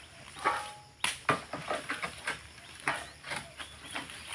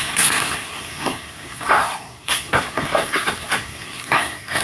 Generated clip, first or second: second